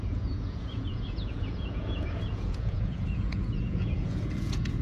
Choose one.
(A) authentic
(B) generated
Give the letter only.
B